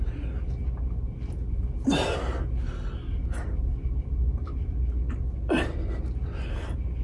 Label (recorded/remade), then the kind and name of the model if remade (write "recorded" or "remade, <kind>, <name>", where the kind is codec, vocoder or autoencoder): recorded